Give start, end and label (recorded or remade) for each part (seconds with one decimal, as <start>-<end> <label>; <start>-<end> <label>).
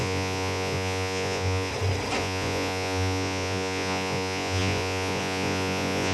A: 0.0-1.7 remade; 1.7-2.2 recorded; 2.2-6.1 remade